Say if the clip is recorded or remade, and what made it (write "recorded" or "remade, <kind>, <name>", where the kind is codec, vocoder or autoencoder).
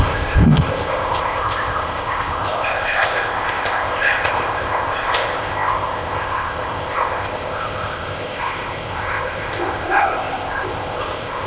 remade, codec, ZipCodec